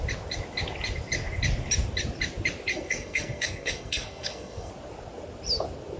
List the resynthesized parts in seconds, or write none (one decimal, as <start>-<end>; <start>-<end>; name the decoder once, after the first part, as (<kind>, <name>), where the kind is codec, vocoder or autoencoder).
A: 2.7-4.7 (codec, SNAC)